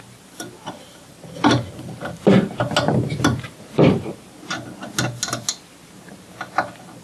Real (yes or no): yes